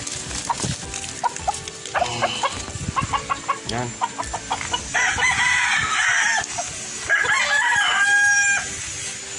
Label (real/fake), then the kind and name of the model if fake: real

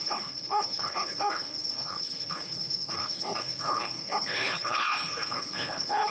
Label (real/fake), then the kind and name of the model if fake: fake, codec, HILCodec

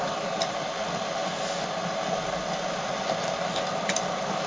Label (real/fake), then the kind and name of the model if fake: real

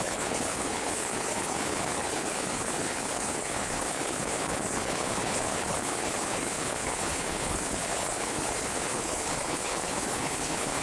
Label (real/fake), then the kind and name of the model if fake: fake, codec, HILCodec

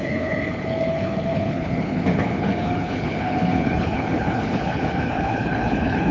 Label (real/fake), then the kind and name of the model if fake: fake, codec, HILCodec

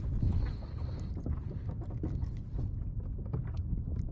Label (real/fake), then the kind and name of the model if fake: real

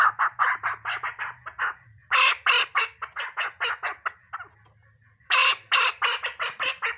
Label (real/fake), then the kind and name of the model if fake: real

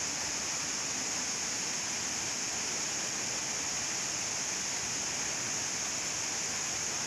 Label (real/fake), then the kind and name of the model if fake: real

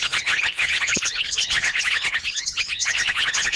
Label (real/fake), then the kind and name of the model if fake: fake, codec, HILCodec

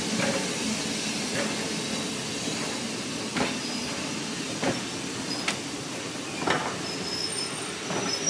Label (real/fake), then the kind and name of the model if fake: real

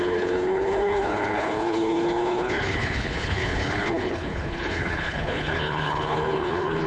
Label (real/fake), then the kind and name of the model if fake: fake, codec, HILCodec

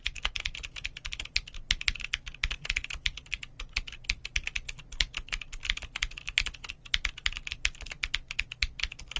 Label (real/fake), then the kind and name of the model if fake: real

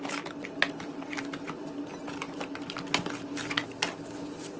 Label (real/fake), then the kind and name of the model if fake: real